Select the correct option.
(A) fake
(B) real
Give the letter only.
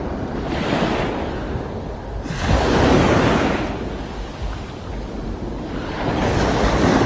B